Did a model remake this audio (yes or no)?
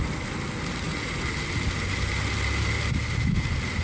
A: no